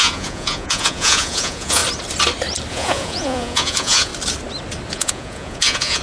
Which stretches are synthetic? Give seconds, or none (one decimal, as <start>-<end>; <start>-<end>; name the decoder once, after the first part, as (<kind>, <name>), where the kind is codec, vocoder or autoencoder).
0.0-1.8 (vocoder, Vocos); 2.7-4.1; 4.9-6.0